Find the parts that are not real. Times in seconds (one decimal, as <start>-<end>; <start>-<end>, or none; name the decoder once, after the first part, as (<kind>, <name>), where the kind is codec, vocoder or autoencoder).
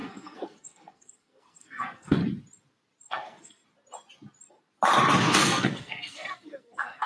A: 0.0-2.2 (codec, SNAC); 3.1-3.6; 5.2-7.1